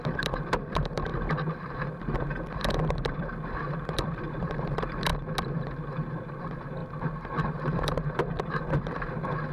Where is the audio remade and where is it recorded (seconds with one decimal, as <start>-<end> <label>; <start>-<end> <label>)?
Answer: 0.0-5.1 remade; 5.1-6.1 recorded; 6.1-6.8 remade; 6.8-7.5 recorded; 7.5-9.5 remade